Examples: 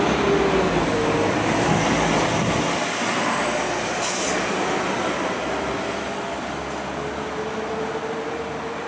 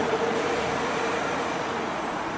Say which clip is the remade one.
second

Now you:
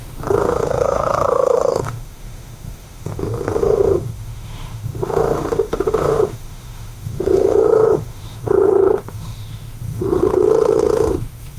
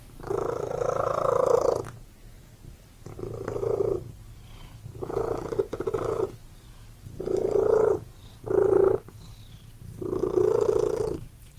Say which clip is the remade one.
first